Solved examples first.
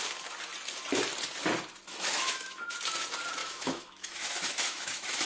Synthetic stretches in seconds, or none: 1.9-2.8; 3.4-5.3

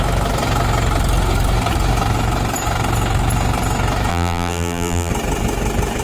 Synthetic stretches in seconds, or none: 4.1-5.1

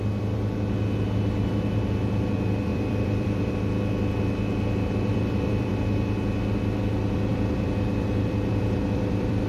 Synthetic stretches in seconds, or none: 2.7-3.5; 5.1-5.7; 7.3-9.5

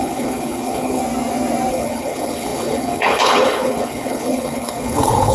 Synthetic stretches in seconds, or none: 0.0-1.0; 1.7-5.3